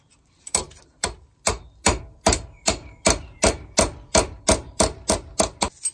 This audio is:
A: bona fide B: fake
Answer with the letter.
A